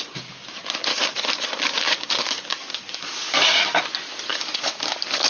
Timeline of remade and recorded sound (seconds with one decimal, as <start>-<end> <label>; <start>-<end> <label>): 0.0-0.9 recorded; 0.9-3.8 remade; 3.8-4.3 recorded; 4.3-5.3 remade